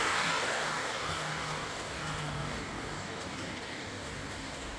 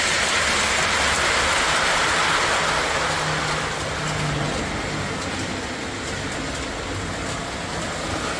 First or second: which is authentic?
second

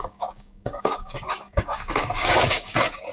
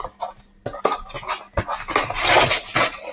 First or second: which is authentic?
second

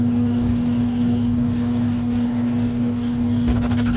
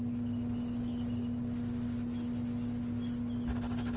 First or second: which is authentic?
second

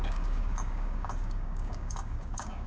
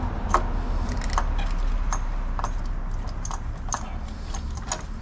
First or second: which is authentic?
second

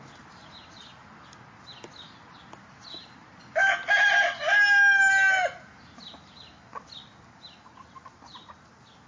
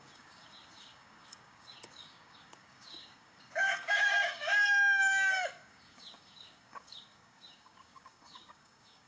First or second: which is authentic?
first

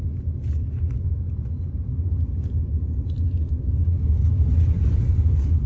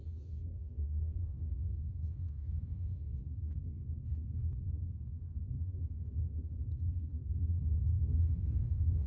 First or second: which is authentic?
first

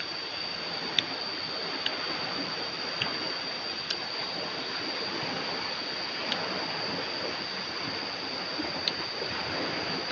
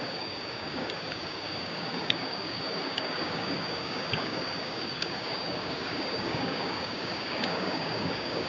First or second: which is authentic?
first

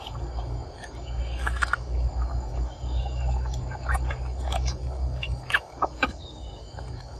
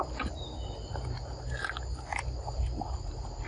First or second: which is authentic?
second